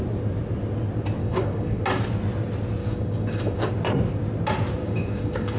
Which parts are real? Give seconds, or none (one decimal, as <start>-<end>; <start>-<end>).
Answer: 0.0-1.2; 1.8-2.8; 3.7-4.8